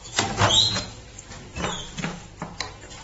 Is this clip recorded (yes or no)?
yes